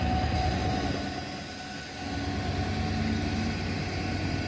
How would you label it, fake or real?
real